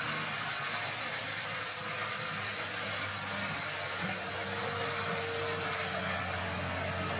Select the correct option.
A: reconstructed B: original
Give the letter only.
B